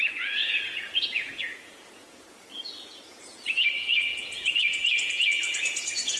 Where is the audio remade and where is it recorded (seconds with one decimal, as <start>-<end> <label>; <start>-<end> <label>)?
0.0-6.2 remade